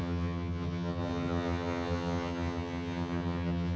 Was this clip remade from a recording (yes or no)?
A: yes